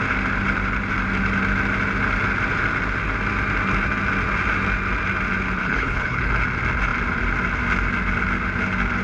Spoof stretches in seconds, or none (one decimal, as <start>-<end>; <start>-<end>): 5.6-6.3